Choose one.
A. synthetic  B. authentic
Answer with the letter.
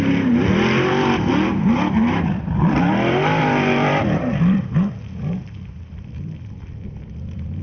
A